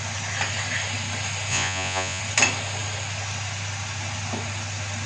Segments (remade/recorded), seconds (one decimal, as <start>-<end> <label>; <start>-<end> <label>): 0.0-1.5 recorded; 1.5-2.2 remade; 2.2-5.1 recorded